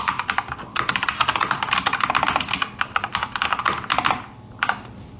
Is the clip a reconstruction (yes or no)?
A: no